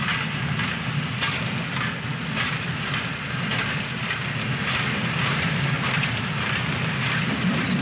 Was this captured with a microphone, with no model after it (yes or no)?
yes